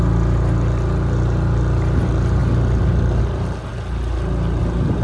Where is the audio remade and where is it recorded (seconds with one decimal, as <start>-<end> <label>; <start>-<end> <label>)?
0.0-5.0 recorded